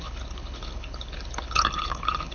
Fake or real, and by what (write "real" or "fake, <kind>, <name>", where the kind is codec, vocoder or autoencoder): fake, codec, HILCodec